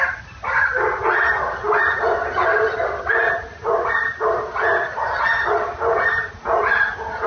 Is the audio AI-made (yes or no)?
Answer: no